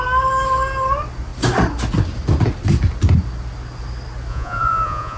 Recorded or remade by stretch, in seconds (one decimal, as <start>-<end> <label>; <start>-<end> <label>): 0.0-4.3 recorded; 4.3-5.2 remade